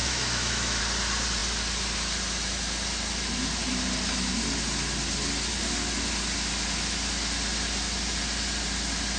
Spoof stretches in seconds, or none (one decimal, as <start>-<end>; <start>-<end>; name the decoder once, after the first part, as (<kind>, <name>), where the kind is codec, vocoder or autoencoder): 0.0-0.8 (autoencoder, DAC-VAE)